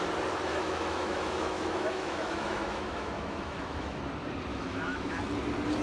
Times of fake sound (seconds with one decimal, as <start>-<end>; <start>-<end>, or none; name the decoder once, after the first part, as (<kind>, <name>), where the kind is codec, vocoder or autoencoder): 0.5-4.0 (autoencoder, DAC-VAE); 4.5-5.2